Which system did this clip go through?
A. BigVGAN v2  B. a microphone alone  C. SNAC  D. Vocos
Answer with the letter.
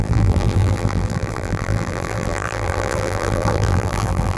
A